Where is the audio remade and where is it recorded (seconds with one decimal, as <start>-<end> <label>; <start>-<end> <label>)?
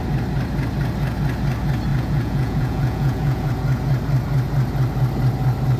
0.0-1.9 recorded; 1.9-3.5 remade; 3.5-5.8 recorded